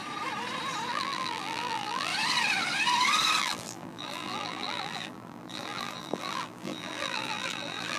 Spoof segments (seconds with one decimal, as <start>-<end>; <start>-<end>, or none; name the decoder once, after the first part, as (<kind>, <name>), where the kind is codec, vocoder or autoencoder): 0.9-2.1 (vocoder, BigVGAN v2); 3.4-8.0